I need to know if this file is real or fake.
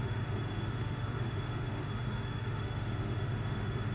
fake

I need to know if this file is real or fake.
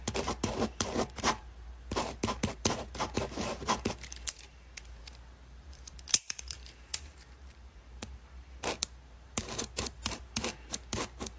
fake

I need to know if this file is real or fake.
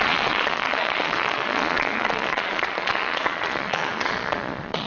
fake